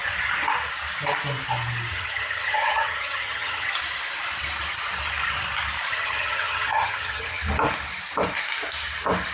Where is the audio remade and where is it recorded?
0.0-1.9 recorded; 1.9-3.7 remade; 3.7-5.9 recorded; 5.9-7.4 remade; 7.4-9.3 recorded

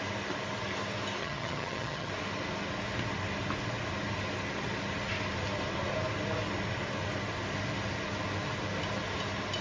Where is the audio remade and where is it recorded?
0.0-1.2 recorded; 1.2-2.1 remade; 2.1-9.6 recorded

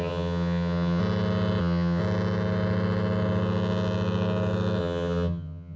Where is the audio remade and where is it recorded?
0.0-1.0 remade; 1.0-1.6 recorded; 1.6-2.0 remade; 2.0-4.8 recorded; 4.8-5.8 remade